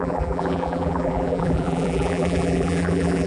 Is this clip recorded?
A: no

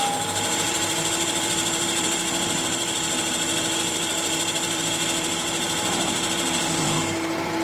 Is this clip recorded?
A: no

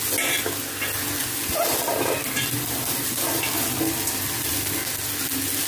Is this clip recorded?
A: yes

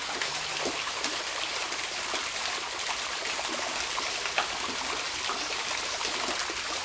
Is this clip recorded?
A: yes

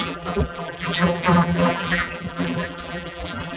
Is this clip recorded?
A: no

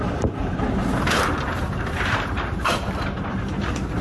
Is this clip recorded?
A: no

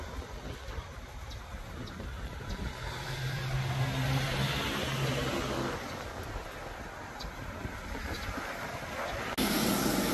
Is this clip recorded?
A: yes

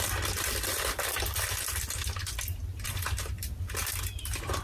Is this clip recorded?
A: yes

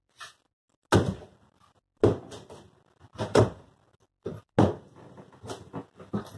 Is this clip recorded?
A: yes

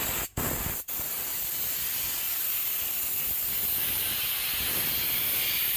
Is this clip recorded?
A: yes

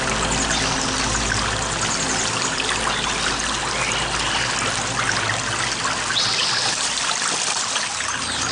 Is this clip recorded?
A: yes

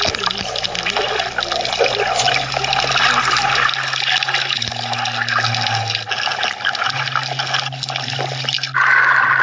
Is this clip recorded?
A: yes